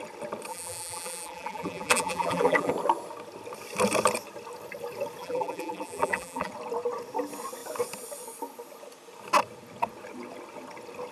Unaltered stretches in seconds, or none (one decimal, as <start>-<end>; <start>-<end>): 0.0-0.5; 2.7-5.2; 6.5-11.1